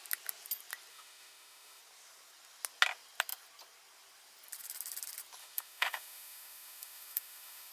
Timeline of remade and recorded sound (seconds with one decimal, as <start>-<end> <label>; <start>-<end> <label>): 0.0-0.9 recorded; 0.9-1.8 remade; 1.8-5.4 recorded; 5.4-7.7 remade

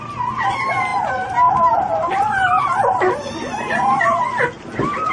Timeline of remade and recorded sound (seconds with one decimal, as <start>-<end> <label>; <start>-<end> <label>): 0.0-5.1 recorded

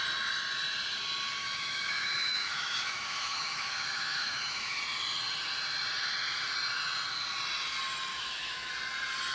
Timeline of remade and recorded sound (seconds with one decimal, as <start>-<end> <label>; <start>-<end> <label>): 0.0-1.4 recorded; 1.4-4.8 remade; 4.8-8.1 recorded; 8.1-8.7 remade; 8.7-9.3 recorded

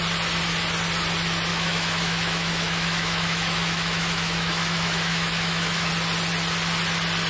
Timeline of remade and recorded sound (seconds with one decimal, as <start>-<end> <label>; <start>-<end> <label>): 0.0-1.5 recorded; 1.5-5.9 remade; 5.9-7.3 recorded

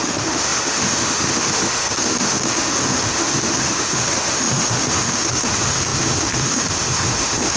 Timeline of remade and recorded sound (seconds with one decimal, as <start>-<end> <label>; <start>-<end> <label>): 0.0-7.6 remade

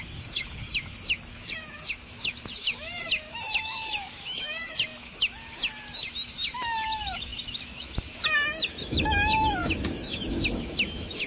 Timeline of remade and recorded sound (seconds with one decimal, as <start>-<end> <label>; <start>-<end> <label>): 0.0-11.3 remade

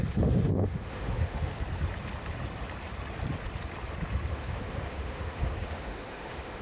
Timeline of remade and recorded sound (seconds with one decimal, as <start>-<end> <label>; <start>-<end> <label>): 0.0-1.5 remade; 1.5-4.3 recorded; 4.3-6.6 remade

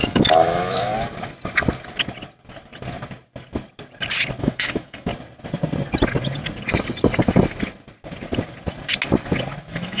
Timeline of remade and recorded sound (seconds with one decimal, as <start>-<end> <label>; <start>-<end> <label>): 0.0-0.9 remade; 0.9-4.4 recorded; 4.4-5.1 remade; 5.1-9.6 recorded; 9.6-10.0 remade